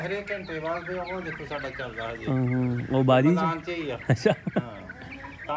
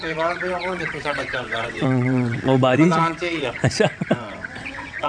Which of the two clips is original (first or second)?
first